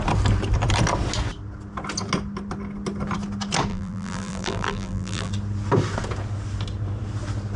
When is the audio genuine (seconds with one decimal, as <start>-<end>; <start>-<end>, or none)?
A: 0.0-3.7; 5.3-7.6